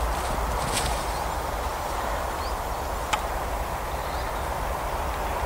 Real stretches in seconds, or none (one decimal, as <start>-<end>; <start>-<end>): 0.0-1.7; 2.6-5.5